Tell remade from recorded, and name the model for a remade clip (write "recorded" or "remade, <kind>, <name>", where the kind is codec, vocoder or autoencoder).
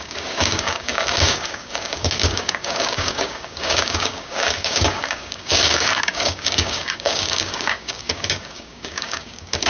remade, codec, DAC